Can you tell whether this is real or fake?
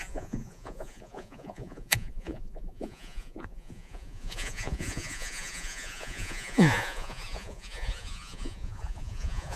fake